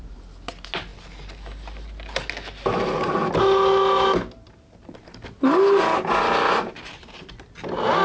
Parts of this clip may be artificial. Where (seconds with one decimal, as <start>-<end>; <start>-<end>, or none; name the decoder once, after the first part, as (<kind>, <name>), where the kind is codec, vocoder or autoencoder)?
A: none